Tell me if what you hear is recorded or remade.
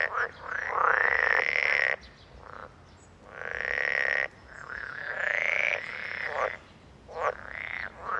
recorded